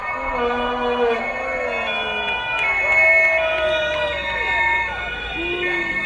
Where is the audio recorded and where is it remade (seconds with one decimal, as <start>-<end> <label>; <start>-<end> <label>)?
0.0-6.1 recorded